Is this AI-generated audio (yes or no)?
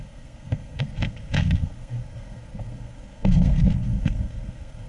yes